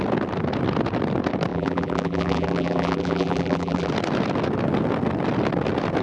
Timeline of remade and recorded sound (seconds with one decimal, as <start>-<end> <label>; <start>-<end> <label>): 0.0-1.5 recorded; 1.5-3.9 remade; 3.9-6.0 recorded